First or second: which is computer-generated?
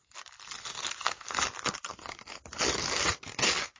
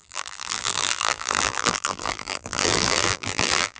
second